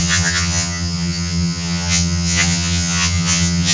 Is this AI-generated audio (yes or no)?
yes